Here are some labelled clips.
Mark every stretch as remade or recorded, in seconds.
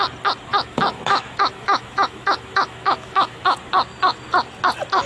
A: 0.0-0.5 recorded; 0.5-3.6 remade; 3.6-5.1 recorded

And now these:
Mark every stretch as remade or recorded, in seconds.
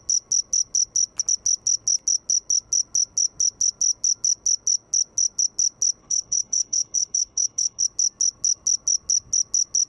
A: 0.0-6.0 recorded; 6.0-7.8 remade; 7.8-9.9 recorded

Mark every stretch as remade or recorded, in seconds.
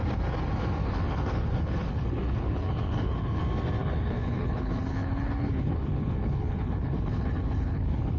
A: 0.0-0.8 recorded; 0.8-3.4 remade; 3.4-3.8 recorded; 3.8-8.2 remade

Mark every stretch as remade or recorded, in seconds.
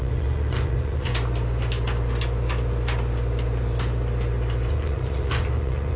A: 0.0-1.1 remade; 1.1-4.7 recorded; 4.7-6.0 remade